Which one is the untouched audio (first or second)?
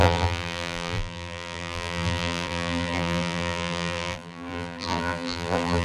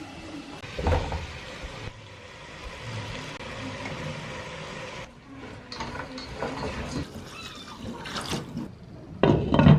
second